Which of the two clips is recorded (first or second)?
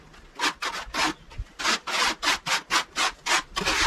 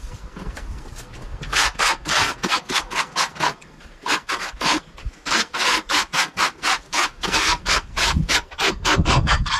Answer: first